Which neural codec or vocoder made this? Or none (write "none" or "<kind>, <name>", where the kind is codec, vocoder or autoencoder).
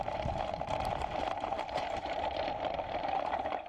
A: vocoder, BigVGAN v2